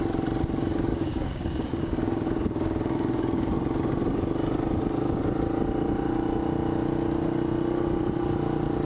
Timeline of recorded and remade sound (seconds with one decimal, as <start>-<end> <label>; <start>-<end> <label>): 0.0-0.9 recorded; 0.9-3.5 remade; 3.5-8.8 recorded